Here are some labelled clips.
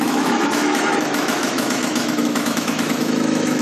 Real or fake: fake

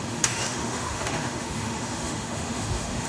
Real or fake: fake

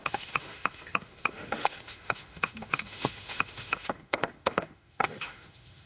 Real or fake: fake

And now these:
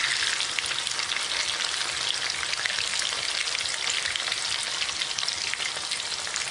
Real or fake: real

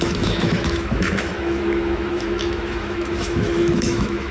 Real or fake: fake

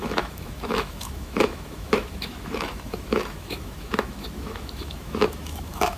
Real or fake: fake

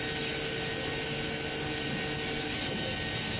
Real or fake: real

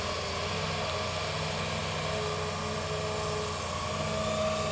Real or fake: real